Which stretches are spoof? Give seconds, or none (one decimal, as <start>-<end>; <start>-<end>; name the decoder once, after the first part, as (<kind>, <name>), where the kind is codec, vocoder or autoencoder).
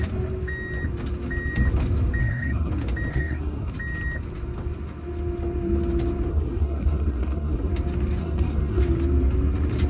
2.2-2.7 (codec, SNAC); 3.1-3.7; 6.3-7.7; 8.2-8.8